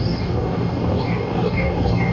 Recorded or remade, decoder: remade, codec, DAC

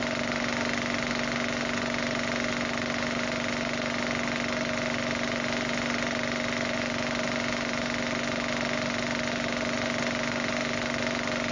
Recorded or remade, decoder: recorded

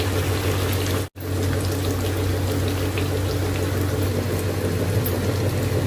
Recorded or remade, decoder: recorded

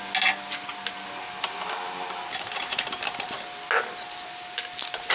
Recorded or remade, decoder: recorded